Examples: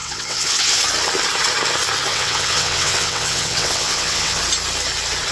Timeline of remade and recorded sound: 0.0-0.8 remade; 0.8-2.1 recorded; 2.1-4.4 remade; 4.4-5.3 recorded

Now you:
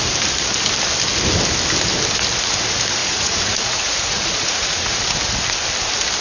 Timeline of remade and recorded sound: 0.0-3.0 recorded; 3.0-5.0 remade; 5.0-6.2 recorded

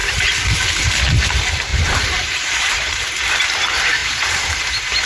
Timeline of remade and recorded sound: 0.0-1.7 recorded; 1.7-3.1 remade; 3.1-4.0 recorded; 4.0-5.1 remade

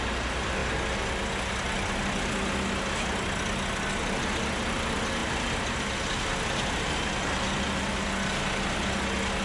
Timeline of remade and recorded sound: 0.0-9.4 recorded

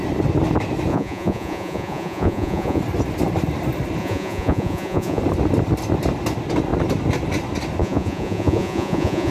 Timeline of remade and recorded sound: 0.0-0.9 recorded; 0.9-2.8 remade; 2.8-4.0 recorded; 4.0-5.2 remade; 5.2-7.8 recorded; 7.8-9.3 remade

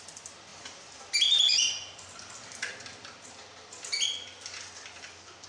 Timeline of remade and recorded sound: 0.0-5.5 recorded